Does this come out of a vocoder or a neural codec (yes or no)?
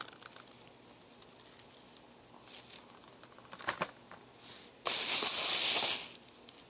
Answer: no